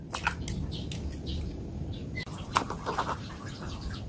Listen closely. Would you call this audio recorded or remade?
recorded